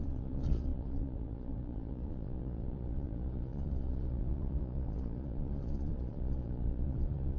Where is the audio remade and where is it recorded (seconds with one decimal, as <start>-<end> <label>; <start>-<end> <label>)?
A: 0.0-7.4 remade